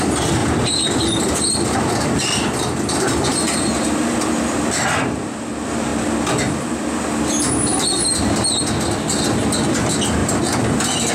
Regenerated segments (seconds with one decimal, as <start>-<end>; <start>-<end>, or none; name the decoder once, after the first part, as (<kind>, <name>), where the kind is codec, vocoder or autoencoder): 0.4-4.9 (vocoder, BigVGAN v2); 7.7-8.5; 10.2-11.1